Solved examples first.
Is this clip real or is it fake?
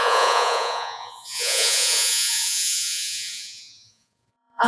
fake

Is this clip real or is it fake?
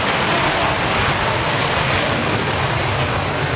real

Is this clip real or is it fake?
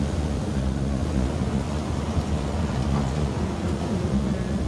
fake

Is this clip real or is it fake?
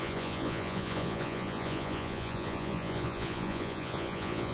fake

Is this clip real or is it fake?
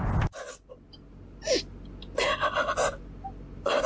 real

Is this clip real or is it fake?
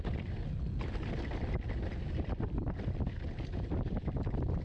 real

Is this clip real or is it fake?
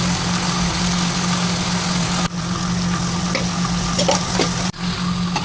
real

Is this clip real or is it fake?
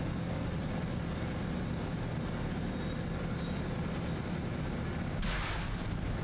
real